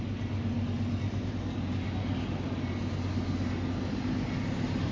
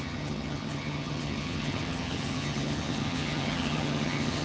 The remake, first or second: second